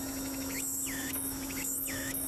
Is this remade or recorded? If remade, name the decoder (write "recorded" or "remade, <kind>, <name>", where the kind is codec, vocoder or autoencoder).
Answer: remade, autoencoder, DAC-VAE